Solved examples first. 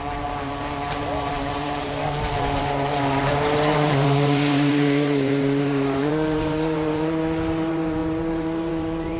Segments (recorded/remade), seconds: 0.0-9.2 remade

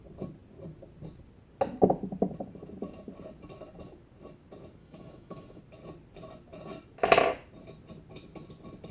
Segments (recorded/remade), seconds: 0.0-4.8 recorded; 4.8-5.6 remade; 5.6-8.9 recorded

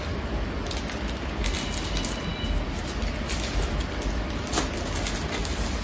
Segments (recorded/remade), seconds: 0.0-5.8 recorded

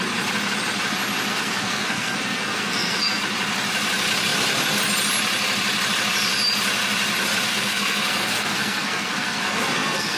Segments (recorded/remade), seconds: 0.0-1.3 recorded; 1.3-3.2 remade; 3.2-7.5 recorded; 7.5-10.2 remade

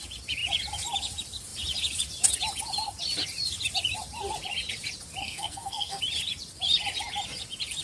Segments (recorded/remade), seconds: 0.0-5.2 recorded; 5.2-6.0 remade; 6.0-7.8 recorded